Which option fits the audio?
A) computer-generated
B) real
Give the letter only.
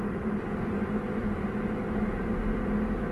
B